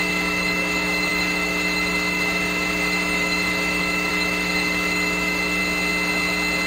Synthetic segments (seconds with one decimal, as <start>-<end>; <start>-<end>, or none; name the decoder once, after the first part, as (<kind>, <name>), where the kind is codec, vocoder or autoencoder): 0.0-5.6 (autoencoder, DAC-VAE)